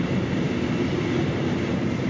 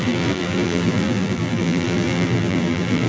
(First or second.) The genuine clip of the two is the first